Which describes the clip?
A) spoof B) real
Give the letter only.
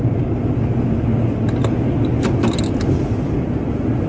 B